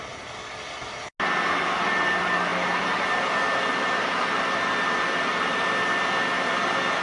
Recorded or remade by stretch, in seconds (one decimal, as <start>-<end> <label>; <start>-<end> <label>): 0.0-7.0 recorded